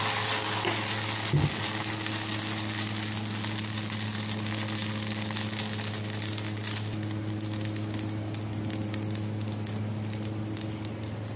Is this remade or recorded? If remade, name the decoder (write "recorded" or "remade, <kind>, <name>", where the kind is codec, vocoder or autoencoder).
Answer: recorded